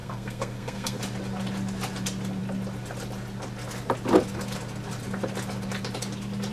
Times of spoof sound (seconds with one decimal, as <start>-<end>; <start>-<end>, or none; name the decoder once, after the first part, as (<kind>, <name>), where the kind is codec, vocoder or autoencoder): 0.0-1.0 (codec, SNAC)